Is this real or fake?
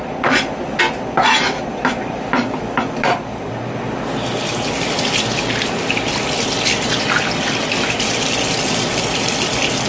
real